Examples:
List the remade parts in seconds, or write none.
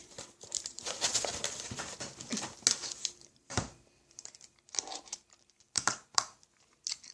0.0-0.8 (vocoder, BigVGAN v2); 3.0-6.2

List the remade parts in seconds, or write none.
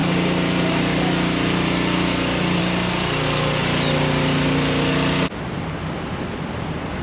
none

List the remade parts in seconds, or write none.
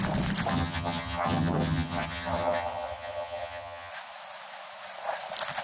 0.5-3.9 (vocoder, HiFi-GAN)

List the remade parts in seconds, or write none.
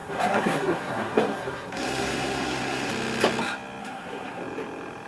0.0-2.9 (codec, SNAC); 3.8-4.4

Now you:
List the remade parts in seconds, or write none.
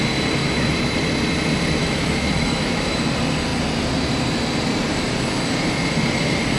0.4-1.0 (autoencoder, DAC-VAE); 1.8-3.0